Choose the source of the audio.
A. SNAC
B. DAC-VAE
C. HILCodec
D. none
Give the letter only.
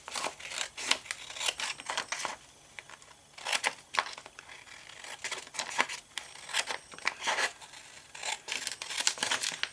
D